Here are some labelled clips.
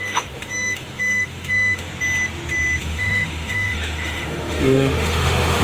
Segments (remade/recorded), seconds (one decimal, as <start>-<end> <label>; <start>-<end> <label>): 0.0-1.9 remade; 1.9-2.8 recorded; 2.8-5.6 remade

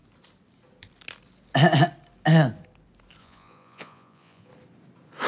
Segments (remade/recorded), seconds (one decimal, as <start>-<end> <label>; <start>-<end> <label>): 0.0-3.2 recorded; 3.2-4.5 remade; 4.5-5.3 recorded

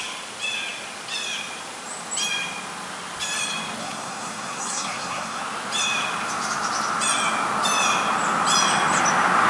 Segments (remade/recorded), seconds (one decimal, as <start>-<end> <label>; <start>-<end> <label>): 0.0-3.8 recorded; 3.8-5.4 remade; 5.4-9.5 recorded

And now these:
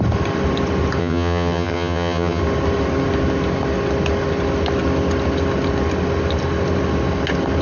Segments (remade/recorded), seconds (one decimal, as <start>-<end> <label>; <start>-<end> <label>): 0.0-1.0 recorded; 1.0-2.4 remade; 2.4-7.6 recorded